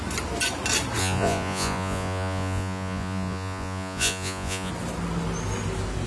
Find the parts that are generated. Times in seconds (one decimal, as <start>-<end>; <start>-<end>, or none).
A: 1.0-4.7

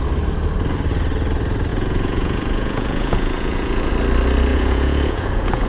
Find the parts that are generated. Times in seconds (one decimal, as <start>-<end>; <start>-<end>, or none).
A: 1.7-3.9; 4.5-5.7

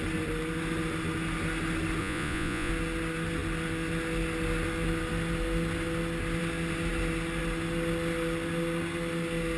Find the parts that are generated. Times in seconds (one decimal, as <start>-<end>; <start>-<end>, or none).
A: 2.0-2.7

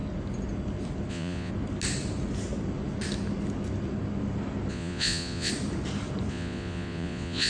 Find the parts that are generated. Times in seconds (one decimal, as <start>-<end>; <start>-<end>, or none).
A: 1.1-1.5; 4.7-5.5; 6.3-7.5